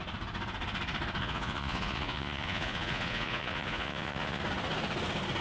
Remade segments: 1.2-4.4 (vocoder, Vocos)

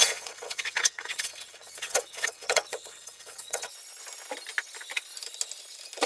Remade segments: 0.0-3.7 (vocoder, WaveNeXt)

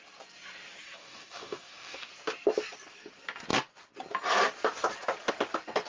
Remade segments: 1.0-2.1 (codec, DAC)

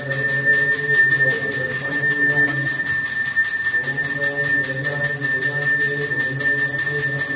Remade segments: 1.7-2.7 (autoencoder, DAC-VAE)

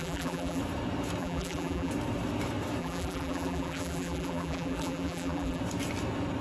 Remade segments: 0.0-0.6 (vocoder, BigVGAN v2); 1.2-1.9; 2.8-5.6

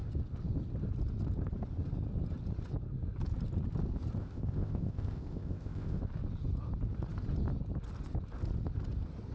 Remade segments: 4.2-6.0 (codec, ZipCodec)

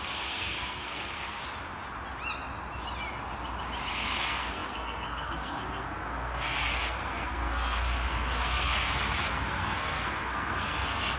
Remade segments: 0.0-1.4 (codec, SNAC); 3.9-11.2